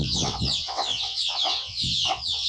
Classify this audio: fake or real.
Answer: fake